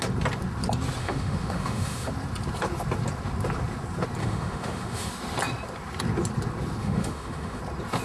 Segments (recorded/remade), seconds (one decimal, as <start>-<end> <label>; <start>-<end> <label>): 0.0-1.0 recorded; 1.0-2.1 remade; 2.1-4.2 recorded; 4.2-5.1 remade; 5.1-6.8 recorded; 6.8-7.6 remade; 7.6-8.0 recorded